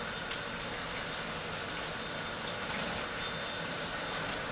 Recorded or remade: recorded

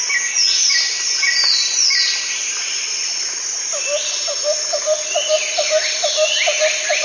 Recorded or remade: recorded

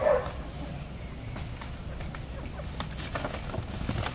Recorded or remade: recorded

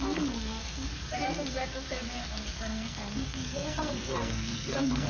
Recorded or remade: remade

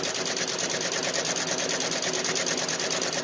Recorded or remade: recorded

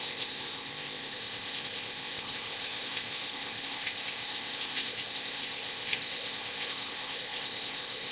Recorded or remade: remade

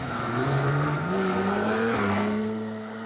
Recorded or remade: remade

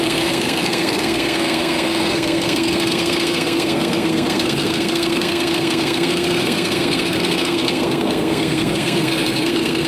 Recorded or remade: remade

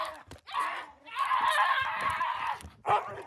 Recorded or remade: recorded